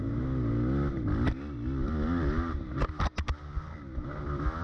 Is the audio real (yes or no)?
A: yes